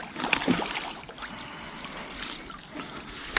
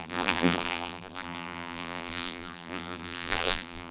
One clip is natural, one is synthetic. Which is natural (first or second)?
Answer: first